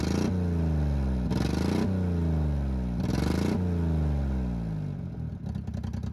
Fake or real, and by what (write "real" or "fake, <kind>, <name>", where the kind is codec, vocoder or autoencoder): real